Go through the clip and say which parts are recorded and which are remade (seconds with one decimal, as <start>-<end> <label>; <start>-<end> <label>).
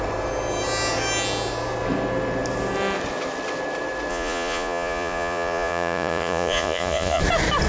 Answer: 0.0-4.1 recorded; 4.1-7.2 remade; 7.2-7.7 recorded